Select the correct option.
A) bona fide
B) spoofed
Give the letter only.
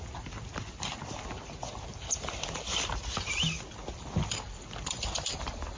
A